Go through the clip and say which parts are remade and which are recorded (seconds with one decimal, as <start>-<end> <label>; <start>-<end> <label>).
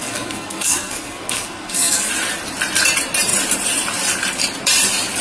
0.0-2.1 remade; 2.1-5.2 recorded